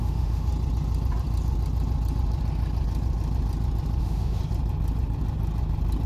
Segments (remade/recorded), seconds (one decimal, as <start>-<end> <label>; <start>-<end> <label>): 0.0-0.5 remade; 0.5-4.0 recorded; 4.0-4.4 remade; 4.4-6.1 recorded